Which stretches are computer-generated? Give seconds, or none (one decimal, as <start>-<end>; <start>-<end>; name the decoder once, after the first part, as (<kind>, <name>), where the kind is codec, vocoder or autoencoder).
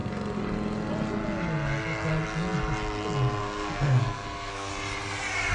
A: 3.4-4.7 (codec, SNAC)